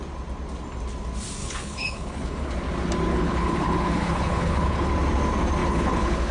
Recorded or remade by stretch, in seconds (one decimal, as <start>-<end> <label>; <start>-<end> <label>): 0.0-1.4 recorded; 1.4-2.5 remade; 2.5-3.1 recorded; 3.1-4.9 remade; 4.9-5.6 recorded; 5.6-6.3 remade